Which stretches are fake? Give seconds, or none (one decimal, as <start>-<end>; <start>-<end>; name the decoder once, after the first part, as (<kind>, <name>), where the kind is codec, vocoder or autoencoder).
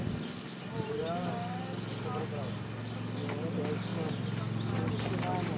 none